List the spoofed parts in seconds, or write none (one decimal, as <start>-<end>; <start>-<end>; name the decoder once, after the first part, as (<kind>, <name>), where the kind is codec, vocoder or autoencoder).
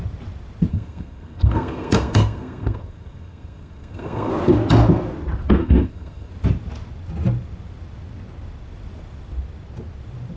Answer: 0.7-4.3 (codec, SNAC); 5.6-6.3